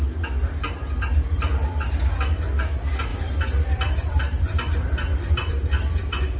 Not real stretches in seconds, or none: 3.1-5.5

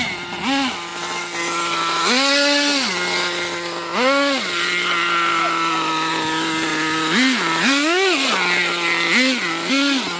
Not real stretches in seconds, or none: none

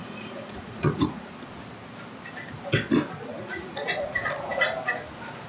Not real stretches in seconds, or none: 0.0-1.3; 3.3-4.5

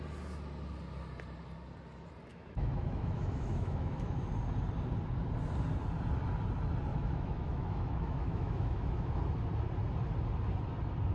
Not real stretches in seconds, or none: 2.3-4.2; 6.9-9.2

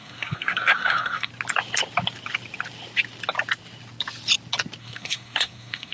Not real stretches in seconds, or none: 0.0-1.3; 4.8-5.9